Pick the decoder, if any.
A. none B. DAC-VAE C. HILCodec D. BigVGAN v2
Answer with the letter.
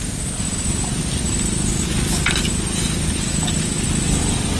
A